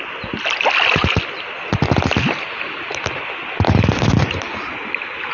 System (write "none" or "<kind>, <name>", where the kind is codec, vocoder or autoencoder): none